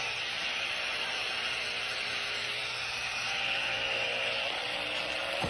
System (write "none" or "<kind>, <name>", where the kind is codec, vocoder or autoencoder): vocoder, BigVGAN v2